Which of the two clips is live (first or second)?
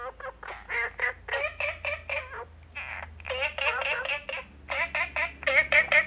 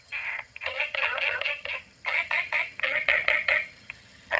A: first